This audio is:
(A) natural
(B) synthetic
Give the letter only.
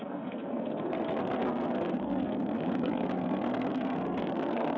B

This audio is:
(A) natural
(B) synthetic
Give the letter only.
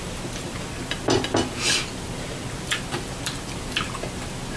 A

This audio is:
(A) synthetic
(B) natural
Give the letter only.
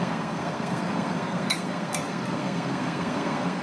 A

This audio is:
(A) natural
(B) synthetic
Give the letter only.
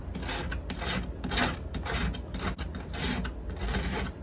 A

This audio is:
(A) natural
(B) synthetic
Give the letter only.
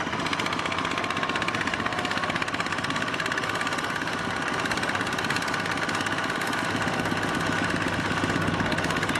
A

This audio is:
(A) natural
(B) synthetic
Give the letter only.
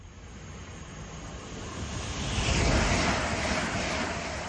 A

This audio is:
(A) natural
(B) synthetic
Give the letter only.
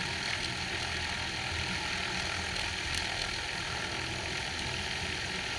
A